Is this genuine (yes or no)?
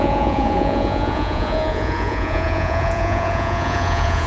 no